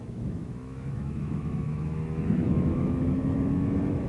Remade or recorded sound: remade